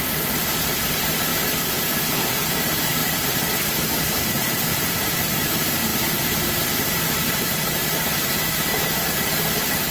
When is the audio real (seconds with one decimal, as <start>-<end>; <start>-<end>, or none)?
1.3-2.1